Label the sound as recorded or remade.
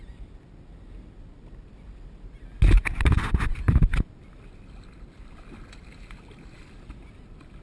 recorded